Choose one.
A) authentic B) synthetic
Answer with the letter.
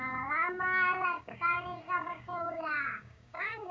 B